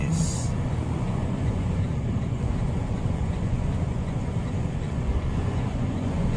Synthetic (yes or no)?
yes